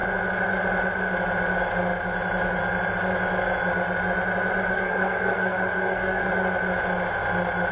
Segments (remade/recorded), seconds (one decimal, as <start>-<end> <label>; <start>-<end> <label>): 0.0-4.7 recorded; 4.7-6.3 remade; 6.3-7.7 recorded